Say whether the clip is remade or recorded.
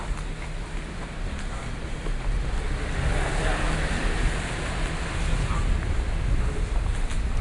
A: recorded